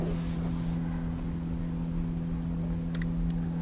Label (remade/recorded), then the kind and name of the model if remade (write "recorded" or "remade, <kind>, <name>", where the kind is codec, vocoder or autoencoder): recorded